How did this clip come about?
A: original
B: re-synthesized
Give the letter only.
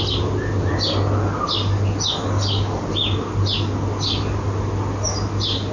A